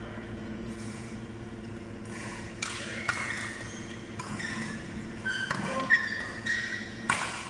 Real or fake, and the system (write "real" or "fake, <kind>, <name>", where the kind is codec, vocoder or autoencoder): fake, vocoder, Vocos